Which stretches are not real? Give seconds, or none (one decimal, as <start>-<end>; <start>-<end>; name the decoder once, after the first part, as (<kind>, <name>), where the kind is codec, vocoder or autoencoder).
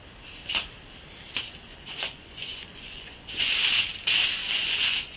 1.7-3.5 (vocoder, Vocos); 4.4-5.2